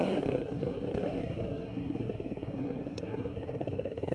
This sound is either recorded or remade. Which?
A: remade